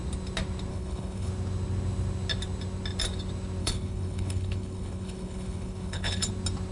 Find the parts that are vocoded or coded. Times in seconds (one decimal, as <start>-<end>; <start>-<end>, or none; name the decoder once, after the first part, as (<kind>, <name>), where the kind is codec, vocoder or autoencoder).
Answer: 0.7-1.3 (codec, HILCodec); 3.6-6.3